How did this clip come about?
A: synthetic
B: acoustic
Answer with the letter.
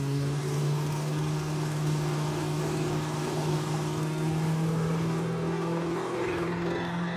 A